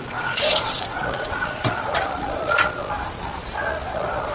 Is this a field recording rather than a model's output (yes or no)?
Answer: no